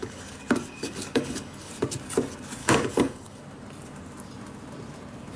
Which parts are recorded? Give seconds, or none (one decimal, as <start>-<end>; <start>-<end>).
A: 1.7-2.6; 3.4-5.4